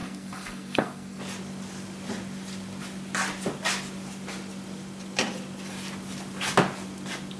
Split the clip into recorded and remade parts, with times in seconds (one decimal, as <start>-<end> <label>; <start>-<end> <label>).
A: 0.0-1.2 remade; 1.2-7.4 recorded